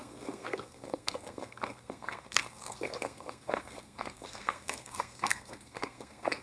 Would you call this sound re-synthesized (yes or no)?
yes